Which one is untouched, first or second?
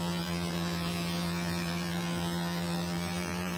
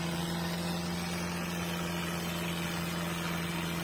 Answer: second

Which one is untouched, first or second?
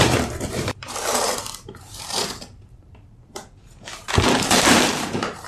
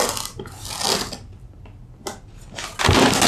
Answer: second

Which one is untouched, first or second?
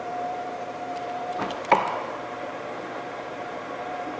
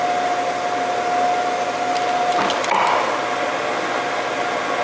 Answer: second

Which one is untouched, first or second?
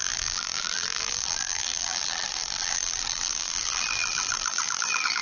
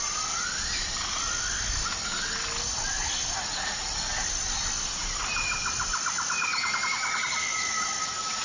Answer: second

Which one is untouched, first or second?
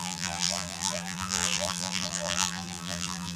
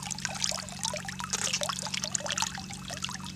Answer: second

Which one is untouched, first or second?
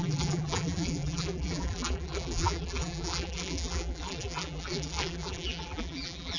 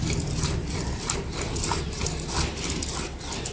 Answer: second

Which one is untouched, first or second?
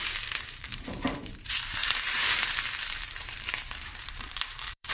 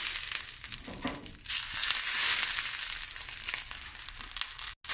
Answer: second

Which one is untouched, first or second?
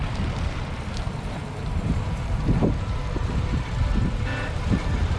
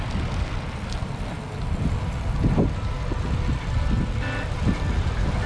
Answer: second